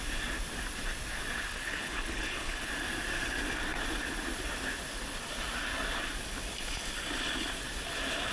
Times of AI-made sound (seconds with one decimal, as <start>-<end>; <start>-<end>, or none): 1.5-2.7